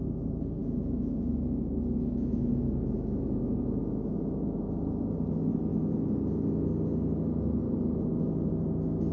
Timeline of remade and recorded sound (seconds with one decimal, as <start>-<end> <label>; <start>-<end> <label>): 0.0-0.6 recorded; 0.6-4.8 remade; 4.8-9.1 recorded